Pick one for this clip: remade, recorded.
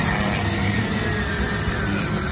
recorded